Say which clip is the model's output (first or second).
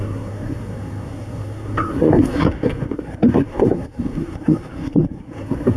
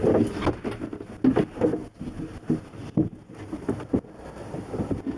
first